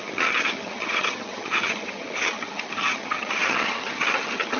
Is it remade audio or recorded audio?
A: remade